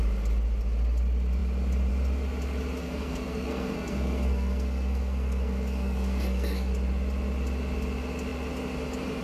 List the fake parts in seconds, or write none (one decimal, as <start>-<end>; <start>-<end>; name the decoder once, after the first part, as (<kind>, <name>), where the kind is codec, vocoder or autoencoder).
2.8-6.7 (codec, SNAC)